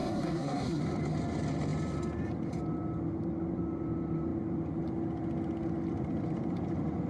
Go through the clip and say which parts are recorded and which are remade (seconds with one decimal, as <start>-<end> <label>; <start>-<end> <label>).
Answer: 0.0-0.8 remade; 0.8-7.1 recorded